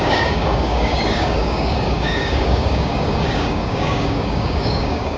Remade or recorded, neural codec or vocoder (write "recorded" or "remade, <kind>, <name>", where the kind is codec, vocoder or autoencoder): remade, codec, DAC